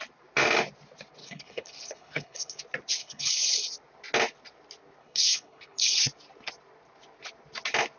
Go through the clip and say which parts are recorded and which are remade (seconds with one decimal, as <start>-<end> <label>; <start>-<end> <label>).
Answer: 0.0-1.2 recorded; 1.2-2.6 remade; 2.6-3.0 recorded; 3.0-3.7 remade; 3.7-5.0 recorded; 5.0-6.0 remade; 6.0-8.0 recorded